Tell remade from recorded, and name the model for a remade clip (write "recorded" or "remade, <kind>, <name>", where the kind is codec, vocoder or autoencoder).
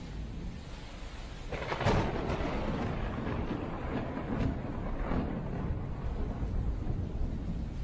recorded